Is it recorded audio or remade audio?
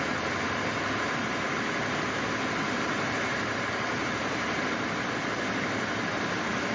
recorded